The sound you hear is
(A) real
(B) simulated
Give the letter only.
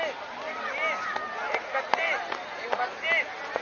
A